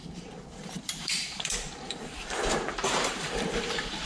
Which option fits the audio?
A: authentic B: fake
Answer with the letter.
B